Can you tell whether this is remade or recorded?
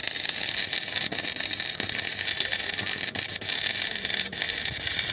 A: recorded